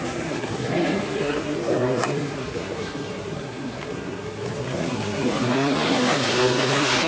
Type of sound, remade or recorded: remade